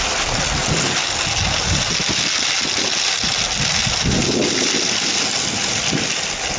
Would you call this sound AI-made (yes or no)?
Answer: no